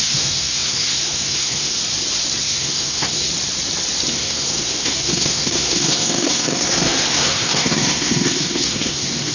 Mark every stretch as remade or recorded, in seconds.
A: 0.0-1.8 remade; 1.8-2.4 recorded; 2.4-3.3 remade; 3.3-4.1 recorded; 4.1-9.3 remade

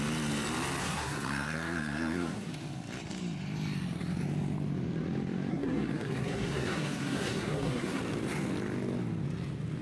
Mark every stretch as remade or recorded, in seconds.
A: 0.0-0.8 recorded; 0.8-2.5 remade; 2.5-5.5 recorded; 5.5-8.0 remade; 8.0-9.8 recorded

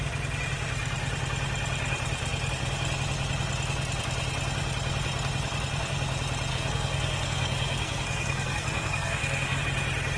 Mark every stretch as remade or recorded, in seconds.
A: 0.0-6.5 recorded; 6.5-9.6 remade; 9.6-10.2 recorded